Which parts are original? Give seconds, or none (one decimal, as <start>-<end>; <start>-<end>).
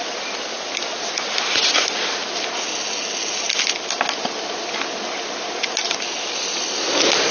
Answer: 0.0-7.3